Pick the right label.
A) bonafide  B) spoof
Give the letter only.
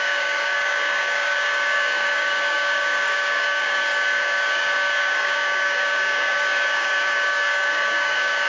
B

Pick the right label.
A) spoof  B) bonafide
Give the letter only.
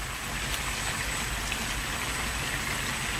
B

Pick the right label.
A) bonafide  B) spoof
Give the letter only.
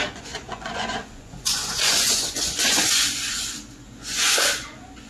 B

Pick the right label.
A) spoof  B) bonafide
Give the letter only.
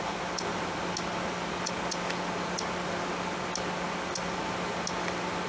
B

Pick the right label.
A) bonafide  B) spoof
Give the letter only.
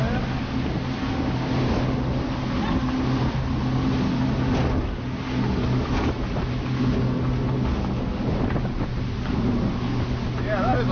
A